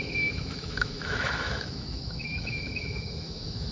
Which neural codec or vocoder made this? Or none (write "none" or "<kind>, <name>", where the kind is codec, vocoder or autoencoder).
autoencoder, DAC-VAE